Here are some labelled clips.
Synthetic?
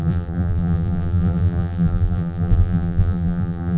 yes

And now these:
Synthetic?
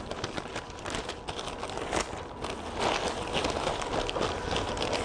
no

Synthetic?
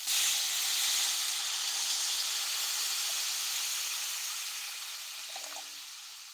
no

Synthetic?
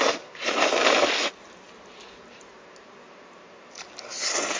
yes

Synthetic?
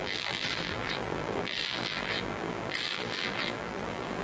yes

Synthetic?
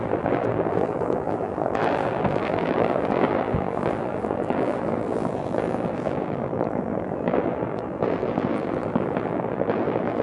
yes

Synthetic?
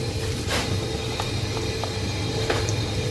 no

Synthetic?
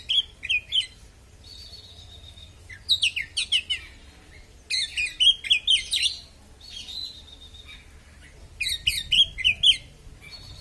no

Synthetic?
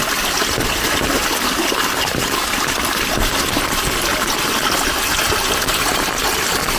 no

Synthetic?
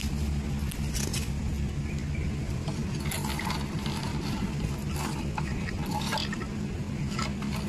no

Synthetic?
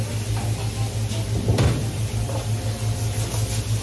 no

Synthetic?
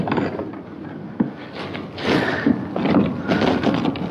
no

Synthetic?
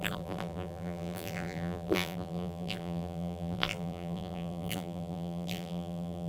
yes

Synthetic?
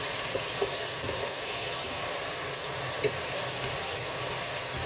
yes